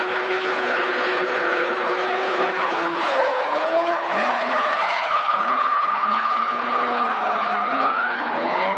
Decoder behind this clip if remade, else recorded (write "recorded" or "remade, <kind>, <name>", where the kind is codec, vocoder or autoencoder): remade, codec, HILCodec